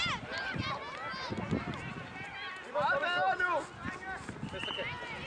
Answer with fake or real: real